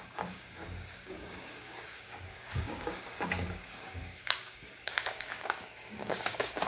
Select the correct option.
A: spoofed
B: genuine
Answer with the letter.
A